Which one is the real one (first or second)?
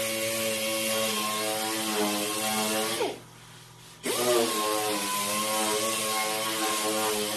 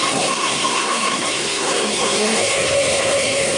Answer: first